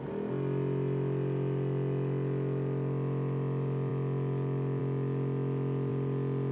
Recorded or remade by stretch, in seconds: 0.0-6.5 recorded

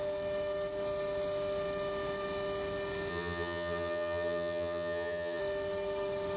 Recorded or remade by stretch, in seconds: 0.0-3.1 recorded; 3.1-5.4 remade; 5.4-6.4 recorded

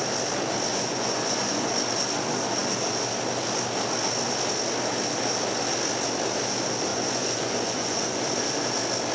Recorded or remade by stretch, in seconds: 0.0-0.7 recorded; 0.7-1.7 remade; 1.7-6.9 recorded; 6.9-8.2 remade; 8.2-9.1 recorded

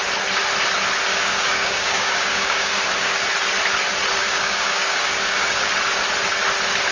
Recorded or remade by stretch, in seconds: 0.0-1.1 recorded; 1.1-3.2 remade; 3.2-4.2 recorded; 4.2-5.7 remade; 5.7-6.9 recorded